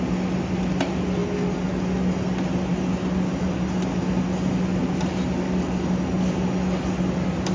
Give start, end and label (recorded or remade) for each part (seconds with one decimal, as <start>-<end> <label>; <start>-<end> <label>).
0.0-7.5 recorded